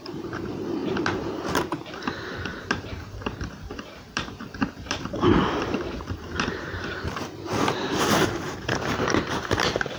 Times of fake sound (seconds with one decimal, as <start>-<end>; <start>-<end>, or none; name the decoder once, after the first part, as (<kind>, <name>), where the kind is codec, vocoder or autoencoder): 0.0-10.0 (vocoder, BigVGAN v2)